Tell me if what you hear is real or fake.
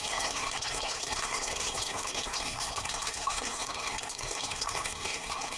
fake